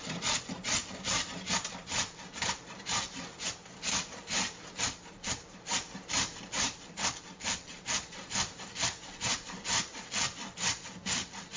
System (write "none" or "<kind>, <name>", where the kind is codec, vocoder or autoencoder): vocoder, BigVGAN v2